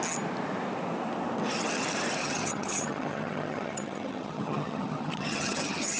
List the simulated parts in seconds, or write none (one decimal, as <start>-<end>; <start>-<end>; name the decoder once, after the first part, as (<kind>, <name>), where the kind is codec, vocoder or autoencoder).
2.2-6.0 (vocoder, HiFi-GAN)